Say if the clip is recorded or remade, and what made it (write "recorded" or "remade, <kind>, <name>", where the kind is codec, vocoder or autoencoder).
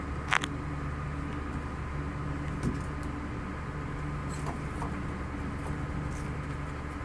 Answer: recorded